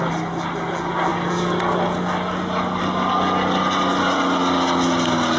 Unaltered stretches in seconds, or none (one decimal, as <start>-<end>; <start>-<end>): 0.0-5.4